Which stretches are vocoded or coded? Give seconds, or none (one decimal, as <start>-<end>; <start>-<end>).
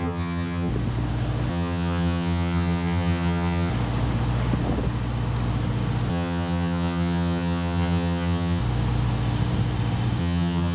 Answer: 0.0-0.7; 1.5-3.7; 6.1-8.6; 10.2-10.7